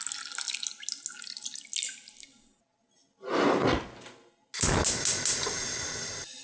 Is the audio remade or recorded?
recorded